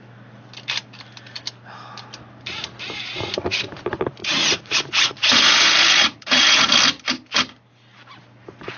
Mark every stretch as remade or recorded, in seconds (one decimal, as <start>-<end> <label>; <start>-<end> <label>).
0.0-4.2 recorded; 4.2-6.7 remade; 6.7-8.8 recorded